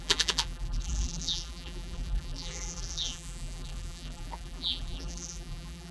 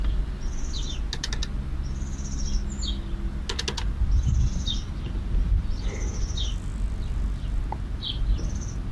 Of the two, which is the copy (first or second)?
first